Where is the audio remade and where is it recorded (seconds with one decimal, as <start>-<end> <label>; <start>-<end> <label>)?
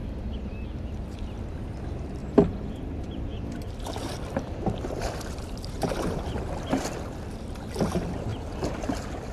0.0-0.9 recorded; 0.9-8.3 remade; 8.3-8.8 recorded; 8.8-9.3 remade